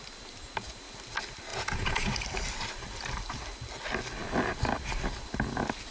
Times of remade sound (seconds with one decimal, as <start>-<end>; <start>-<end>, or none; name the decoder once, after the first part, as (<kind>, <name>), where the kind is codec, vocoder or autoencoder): 1.5-2.1 (vocoder, Vocos)